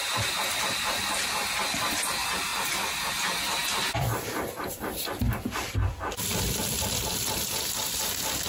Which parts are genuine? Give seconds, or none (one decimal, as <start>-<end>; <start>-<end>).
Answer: 0.0-3.6; 5.3-6.3; 8.0-8.5